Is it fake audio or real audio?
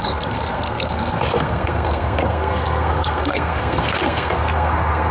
fake